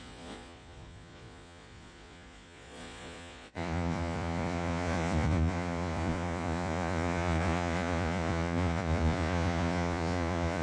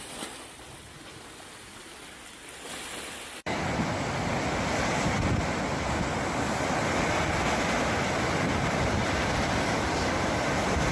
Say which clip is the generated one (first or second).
first